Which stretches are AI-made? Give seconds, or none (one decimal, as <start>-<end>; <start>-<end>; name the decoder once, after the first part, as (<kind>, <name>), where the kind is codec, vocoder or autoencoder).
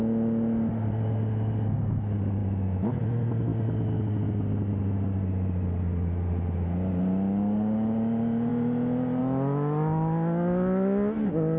none